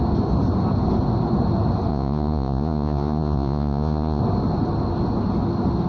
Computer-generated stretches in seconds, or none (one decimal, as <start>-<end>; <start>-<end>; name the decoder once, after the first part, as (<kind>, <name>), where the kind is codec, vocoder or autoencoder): 1.9-4.2 (vocoder, Vocos)